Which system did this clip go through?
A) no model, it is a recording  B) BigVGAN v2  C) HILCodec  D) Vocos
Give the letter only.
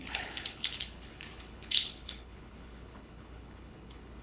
C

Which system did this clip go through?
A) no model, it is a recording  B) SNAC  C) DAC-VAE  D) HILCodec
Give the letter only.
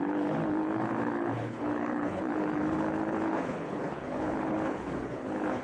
D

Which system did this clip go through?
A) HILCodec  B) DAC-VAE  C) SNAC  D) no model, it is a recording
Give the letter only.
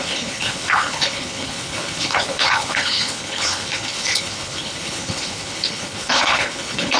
A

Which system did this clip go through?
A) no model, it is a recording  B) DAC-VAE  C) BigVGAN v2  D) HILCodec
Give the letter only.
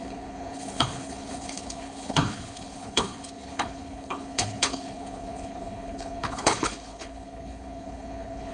D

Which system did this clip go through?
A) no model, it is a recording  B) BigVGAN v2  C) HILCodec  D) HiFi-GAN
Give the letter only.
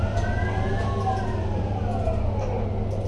A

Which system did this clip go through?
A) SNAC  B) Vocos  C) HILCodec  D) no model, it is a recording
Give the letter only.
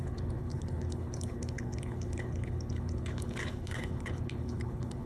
C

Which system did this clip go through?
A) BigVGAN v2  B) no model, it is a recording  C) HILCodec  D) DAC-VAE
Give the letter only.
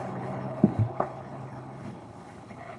C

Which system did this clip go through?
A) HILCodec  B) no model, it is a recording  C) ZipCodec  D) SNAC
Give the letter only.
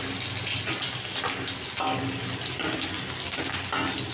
B